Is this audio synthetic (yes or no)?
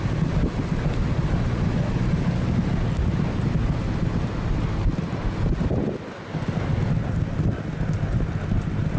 no